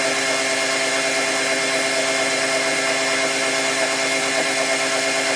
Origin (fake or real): real